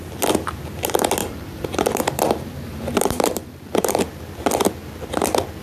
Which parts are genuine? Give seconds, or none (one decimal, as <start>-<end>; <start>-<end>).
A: 0.0-1.2; 4.0-5.6